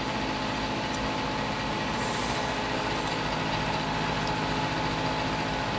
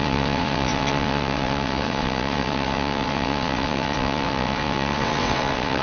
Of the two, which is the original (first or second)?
first